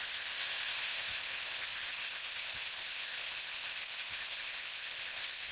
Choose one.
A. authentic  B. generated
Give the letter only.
B